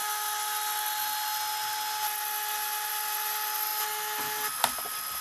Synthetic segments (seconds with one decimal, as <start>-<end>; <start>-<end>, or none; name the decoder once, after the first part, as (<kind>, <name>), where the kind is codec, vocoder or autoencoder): none